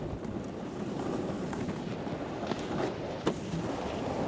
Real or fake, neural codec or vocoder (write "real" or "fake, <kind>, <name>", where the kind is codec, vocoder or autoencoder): real